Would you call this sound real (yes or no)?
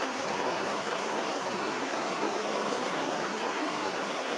no